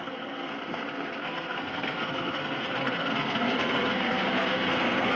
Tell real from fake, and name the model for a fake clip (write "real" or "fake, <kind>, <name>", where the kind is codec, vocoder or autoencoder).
fake, codec, SNAC